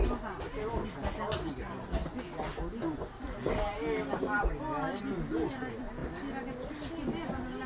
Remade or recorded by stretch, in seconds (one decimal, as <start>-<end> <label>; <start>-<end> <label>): 0.0-7.7 recorded